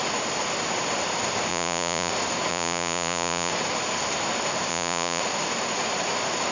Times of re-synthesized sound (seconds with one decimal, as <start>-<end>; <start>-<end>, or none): 1.5-2.1; 2.5-3.5; 4.7-5.2